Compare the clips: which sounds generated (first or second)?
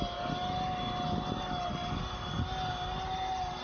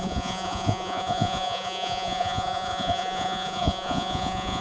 second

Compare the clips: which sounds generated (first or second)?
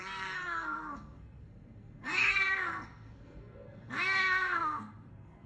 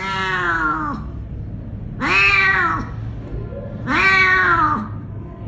first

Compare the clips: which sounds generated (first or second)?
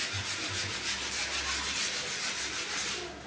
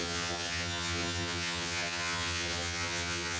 second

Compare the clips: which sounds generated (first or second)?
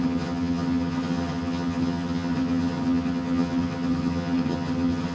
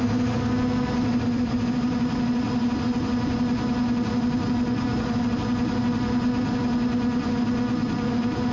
first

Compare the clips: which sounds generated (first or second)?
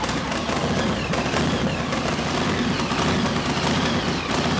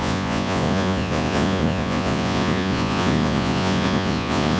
second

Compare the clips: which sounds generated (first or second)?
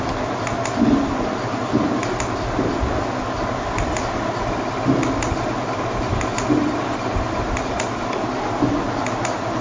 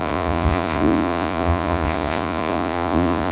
second